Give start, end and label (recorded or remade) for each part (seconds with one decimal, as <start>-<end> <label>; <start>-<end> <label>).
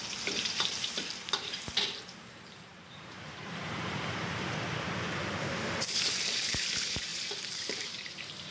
0.0-8.5 remade